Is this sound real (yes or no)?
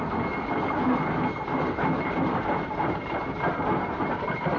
yes